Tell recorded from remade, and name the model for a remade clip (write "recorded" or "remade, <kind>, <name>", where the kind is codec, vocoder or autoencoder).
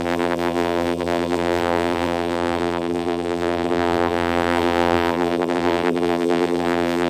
remade, vocoder, BigVGAN v2